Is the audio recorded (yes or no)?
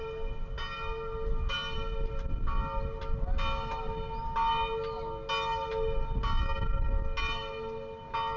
yes